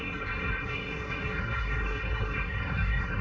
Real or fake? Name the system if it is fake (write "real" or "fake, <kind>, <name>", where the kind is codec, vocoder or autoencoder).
fake, codec, SNAC